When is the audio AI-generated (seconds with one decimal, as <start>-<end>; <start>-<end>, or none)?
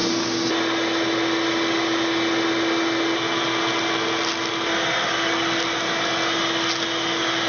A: none